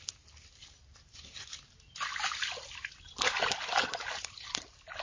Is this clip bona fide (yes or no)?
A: yes